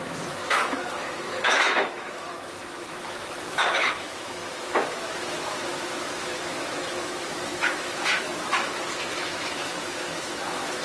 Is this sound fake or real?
fake